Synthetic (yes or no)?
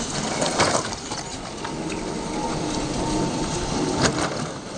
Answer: no